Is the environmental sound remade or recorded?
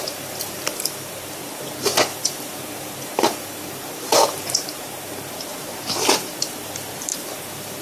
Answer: remade